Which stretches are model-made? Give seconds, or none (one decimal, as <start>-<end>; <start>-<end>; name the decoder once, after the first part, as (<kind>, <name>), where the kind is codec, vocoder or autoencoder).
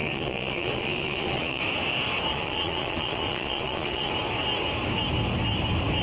0.0-1.6 (vocoder, Vocos); 2.3-4.1